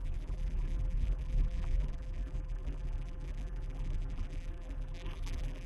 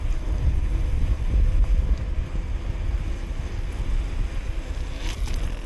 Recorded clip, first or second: second